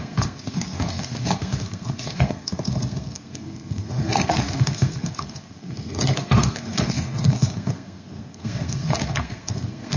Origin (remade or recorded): remade